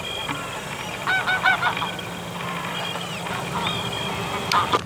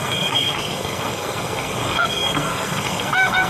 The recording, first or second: first